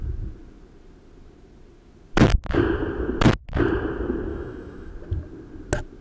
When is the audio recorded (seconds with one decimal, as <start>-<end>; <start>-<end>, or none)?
0.0-4.3; 4.9-6.0